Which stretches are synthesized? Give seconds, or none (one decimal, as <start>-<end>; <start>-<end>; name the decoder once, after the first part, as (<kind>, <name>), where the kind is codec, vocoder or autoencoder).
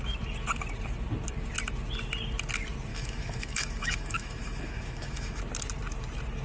2.9-5.4 (autoencoder, DAC-VAE)